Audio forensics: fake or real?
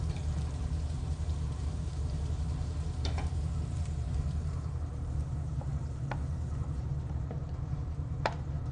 fake